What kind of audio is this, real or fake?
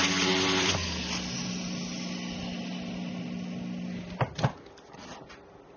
real